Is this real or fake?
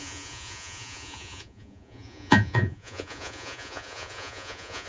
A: fake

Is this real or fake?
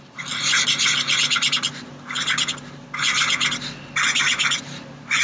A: real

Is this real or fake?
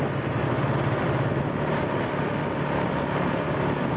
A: real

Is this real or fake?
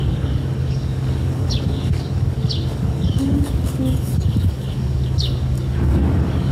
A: fake